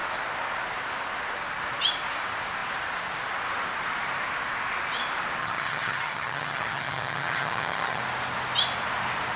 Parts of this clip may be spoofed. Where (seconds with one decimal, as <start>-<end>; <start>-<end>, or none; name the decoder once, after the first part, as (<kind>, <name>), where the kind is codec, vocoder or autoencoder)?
5.4-8.0 (vocoder, HiFi-GAN)